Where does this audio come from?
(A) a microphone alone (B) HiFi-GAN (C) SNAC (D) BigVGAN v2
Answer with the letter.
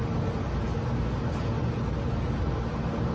A